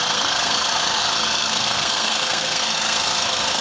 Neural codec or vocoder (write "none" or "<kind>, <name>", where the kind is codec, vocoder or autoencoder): codec, SNAC